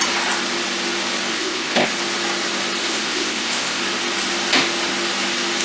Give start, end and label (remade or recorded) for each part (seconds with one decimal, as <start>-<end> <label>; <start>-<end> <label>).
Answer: 0.0-1.3 recorded; 1.3-1.9 remade; 1.9-2.8 recorded; 2.8-3.8 remade; 3.8-5.6 recorded